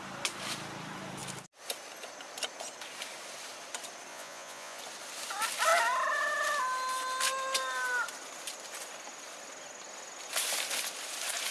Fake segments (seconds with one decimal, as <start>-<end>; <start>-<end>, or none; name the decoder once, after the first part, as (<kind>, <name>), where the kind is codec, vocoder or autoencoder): 4.1-4.8 (vocoder, Vocos)